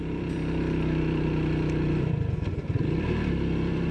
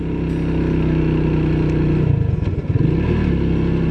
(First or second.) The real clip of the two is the second